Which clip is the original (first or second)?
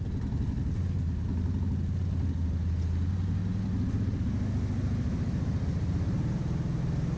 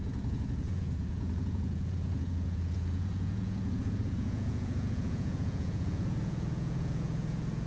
first